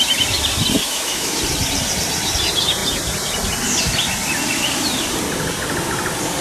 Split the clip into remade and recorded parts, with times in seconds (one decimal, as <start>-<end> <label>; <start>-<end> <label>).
0.0-0.8 recorded; 0.8-1.4 remade; 1.4-6.4 recorded